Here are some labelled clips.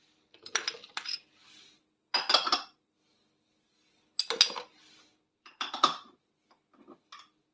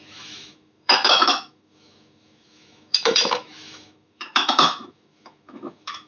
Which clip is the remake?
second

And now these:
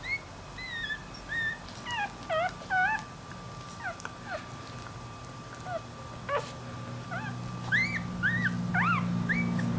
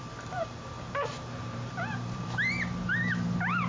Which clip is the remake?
second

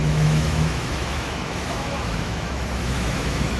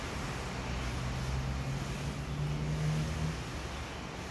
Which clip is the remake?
first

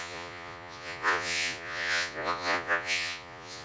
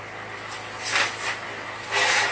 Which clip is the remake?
first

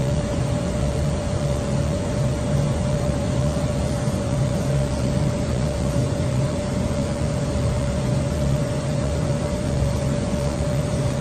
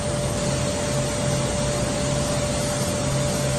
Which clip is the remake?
first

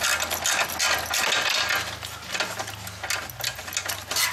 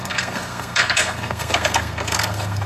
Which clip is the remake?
second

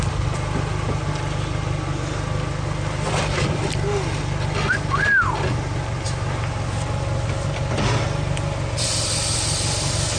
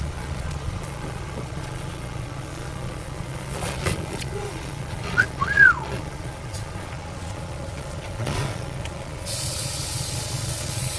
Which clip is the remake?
second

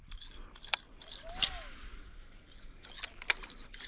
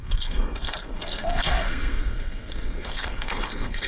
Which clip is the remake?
second